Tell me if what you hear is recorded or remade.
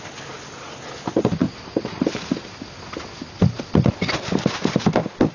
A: recorded